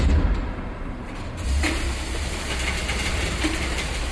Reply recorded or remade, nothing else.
remade